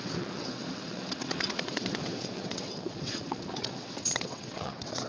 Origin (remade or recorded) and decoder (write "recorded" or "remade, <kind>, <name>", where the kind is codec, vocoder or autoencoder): remade, vocoder, WaveNeXt